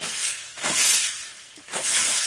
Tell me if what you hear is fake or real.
fake